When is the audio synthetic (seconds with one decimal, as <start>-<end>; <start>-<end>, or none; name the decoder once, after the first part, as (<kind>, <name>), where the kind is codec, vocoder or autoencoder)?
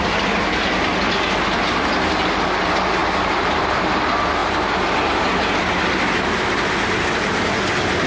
none